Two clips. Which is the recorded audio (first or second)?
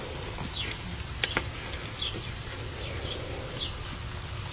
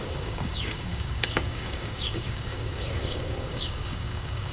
first